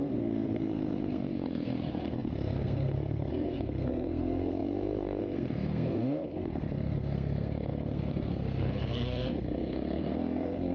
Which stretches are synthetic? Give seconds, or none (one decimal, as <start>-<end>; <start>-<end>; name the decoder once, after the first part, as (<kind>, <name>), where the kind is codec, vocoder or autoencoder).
0.0-10.7 (codec, SNAC)